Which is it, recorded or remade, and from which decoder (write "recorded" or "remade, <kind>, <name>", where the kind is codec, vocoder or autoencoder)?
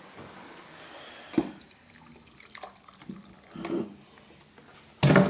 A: recorded